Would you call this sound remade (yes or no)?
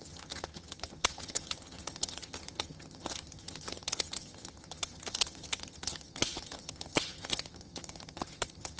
yes